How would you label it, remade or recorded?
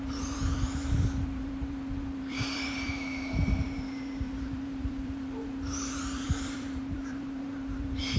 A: remade